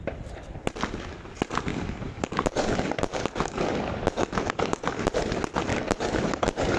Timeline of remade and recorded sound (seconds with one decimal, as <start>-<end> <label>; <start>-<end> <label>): 0.0-1.7 recorded; 1.7-5.1 remade; 5.1-5.7 recorded; 5.7-6.8 remade